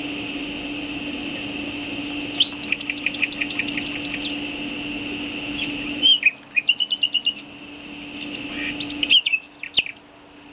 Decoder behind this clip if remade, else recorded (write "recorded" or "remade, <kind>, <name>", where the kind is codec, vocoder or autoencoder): recorded